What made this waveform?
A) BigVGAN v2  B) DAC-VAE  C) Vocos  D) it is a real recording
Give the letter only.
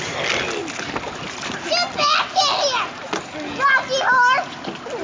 D